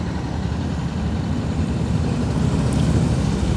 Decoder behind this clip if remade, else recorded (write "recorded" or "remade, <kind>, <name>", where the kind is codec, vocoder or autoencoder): remade, vocoder, BigVGAN v2